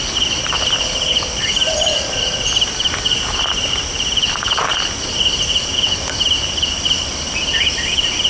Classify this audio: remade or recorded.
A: remade